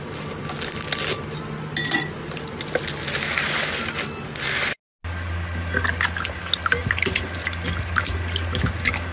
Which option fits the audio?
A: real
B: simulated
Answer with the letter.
A